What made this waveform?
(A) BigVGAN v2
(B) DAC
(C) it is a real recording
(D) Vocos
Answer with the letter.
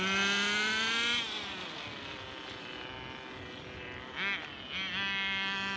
C